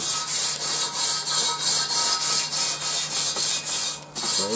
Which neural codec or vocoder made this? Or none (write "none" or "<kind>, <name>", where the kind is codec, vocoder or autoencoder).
none